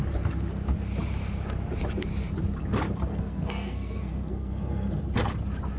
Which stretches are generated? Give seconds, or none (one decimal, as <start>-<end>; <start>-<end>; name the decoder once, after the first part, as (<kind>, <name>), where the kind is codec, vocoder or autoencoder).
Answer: 3.1-4.9 (codec, SNAC)